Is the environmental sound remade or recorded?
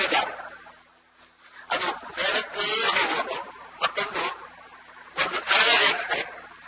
recorded